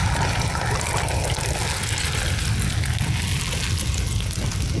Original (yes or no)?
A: yes